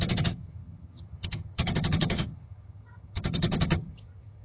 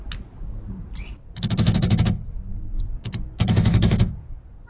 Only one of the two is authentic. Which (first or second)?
second